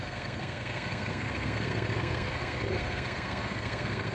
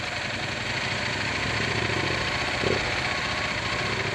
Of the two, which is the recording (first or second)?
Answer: second